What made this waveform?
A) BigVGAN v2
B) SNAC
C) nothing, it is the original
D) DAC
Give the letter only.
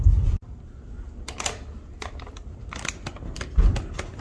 C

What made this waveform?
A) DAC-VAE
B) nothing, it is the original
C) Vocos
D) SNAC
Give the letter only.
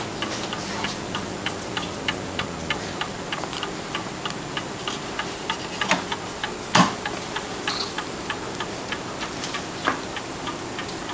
B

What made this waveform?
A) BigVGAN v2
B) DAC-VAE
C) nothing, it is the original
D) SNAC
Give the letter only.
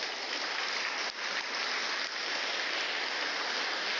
C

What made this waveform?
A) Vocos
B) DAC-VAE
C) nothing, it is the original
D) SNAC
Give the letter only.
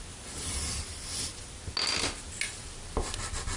C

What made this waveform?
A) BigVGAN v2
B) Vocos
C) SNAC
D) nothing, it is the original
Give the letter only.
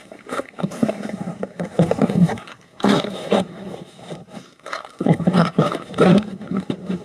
C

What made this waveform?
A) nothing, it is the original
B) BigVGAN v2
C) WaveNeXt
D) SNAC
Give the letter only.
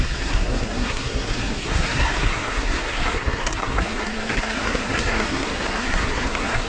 D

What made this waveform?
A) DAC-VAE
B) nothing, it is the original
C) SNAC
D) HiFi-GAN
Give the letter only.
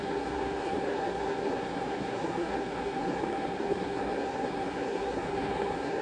C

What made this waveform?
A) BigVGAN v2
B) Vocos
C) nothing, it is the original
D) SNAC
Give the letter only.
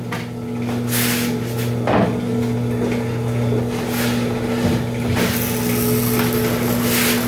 C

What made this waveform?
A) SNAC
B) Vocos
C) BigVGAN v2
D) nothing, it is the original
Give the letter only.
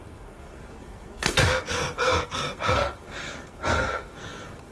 A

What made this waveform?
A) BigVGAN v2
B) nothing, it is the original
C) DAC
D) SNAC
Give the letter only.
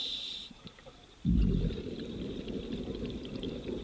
B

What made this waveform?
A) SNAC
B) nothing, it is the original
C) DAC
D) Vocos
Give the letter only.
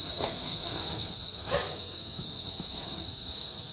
A